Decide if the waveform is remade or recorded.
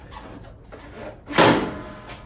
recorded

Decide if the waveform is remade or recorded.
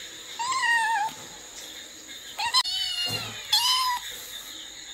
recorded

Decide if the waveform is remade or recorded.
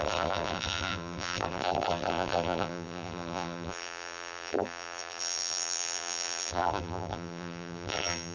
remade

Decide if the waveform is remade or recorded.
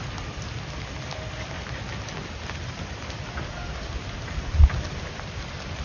recorded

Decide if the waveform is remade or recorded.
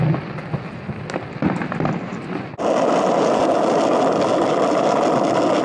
recorded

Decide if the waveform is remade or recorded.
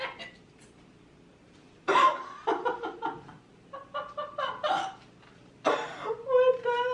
recorded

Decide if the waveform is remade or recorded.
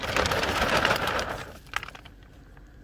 remade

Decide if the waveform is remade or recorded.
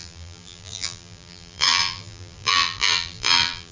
remade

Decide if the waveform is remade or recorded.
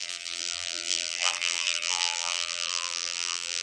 remade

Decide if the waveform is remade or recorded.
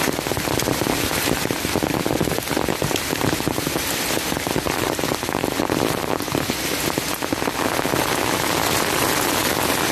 recorded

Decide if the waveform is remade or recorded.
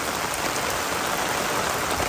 recorded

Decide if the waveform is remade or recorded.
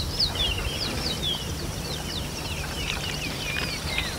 remade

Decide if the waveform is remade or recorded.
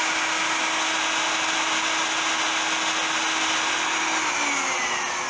recorded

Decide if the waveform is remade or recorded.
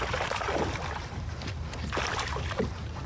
recorded